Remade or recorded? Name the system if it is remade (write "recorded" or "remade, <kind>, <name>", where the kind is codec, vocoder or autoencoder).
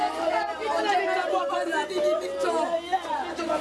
recorded